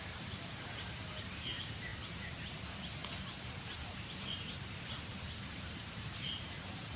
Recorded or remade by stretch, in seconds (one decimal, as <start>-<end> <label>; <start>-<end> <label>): 0.0-7.0 remade